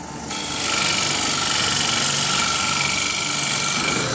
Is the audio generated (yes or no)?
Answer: no